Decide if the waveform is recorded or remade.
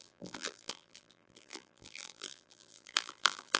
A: remade